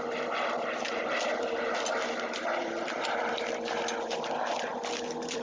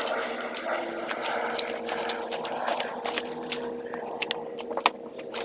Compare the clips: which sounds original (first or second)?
second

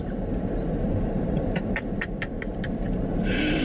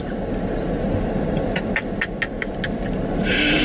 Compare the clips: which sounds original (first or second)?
second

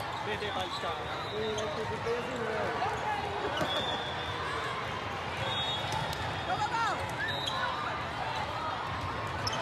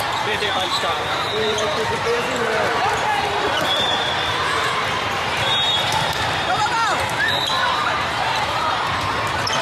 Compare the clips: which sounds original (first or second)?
first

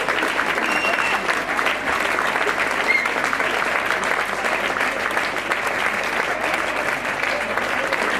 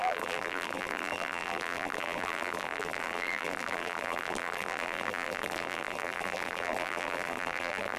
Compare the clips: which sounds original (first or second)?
first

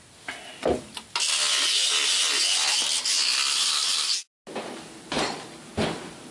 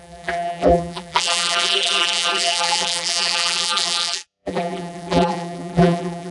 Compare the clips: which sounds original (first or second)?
first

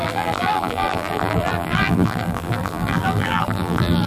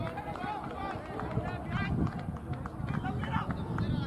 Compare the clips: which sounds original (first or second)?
second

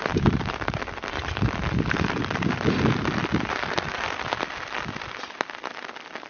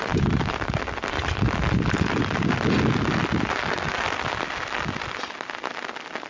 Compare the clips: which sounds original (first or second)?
second